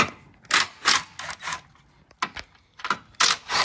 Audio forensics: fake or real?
real